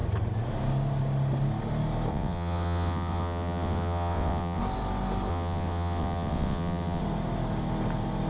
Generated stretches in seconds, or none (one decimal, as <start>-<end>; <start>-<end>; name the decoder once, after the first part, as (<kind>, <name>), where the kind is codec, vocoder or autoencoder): 2.1-4.6 (vocoder, WaveNeXt); 5.3-7.0